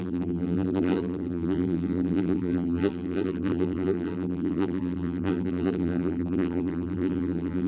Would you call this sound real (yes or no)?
no